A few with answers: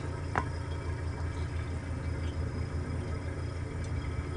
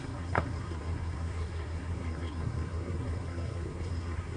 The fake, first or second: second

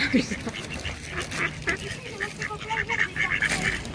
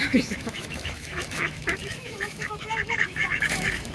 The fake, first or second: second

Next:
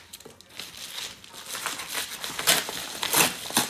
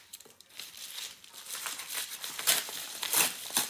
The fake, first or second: second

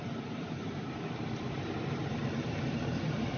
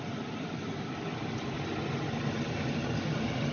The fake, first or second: first